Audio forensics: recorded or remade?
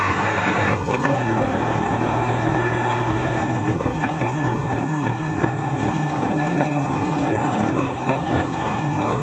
remade